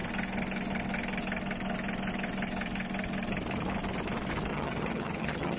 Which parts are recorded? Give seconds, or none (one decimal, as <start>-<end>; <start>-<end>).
0.0-4.5